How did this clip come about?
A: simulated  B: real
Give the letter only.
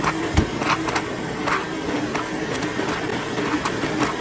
B